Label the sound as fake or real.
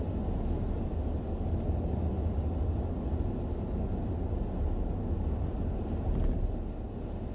real